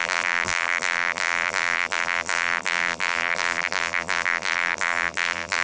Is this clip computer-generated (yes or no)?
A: yes